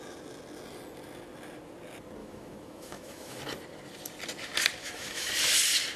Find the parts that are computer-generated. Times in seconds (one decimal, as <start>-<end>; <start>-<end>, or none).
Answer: 2.2-3.4; 4.8-5.3